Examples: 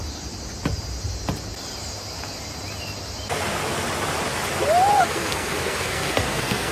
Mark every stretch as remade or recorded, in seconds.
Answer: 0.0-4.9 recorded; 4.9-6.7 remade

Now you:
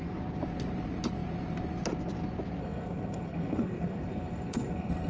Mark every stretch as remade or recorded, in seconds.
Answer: 0.0-2.6 recorded; 2.6-5.1 remade

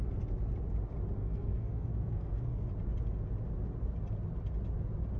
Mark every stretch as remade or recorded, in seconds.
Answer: 0.0-1.2 recorded; 1.2-2.7 remade; 2.7-5.2 recorded

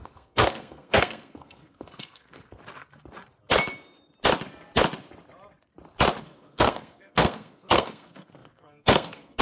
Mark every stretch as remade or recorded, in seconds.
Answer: 0.0-2.6 remade; 2.6-6.2 recorded; 6.2-9.4 remade

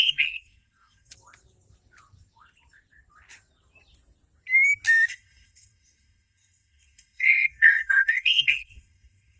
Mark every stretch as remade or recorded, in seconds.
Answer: 0.0-1.1 remade; 1.1-5.1 recorded; 5.1-9.4 remade

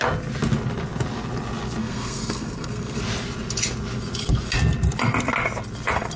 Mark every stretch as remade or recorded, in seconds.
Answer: 0.0-1.8 recorded; 1.8-3.0 remade; 3.0-6.2 recorded

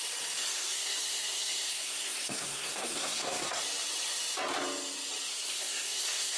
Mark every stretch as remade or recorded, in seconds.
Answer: 0.0-0.4 recorded; 0.4-3.6 remade; 3.6-5.3 recorded; 5.3-6.4 remade